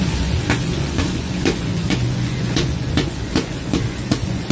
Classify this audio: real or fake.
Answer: fake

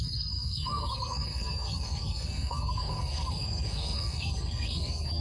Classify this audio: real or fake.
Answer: fake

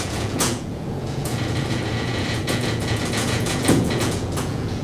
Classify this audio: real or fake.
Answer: fake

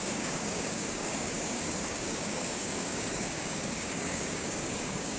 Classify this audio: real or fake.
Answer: fake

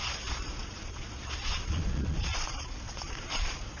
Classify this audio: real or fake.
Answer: fake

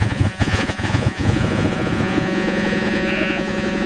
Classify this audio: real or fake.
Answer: fake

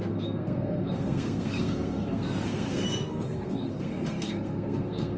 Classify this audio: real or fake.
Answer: fake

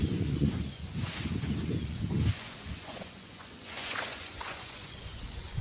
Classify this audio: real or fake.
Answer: fake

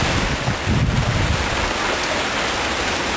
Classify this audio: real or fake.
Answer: real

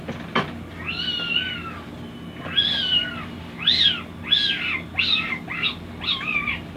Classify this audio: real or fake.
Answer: real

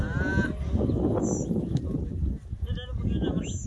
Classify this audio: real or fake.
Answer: real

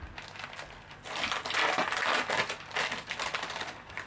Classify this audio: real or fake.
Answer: real